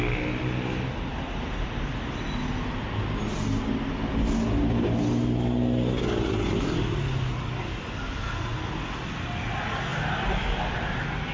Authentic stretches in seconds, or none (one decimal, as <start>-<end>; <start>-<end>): 0.0-11.3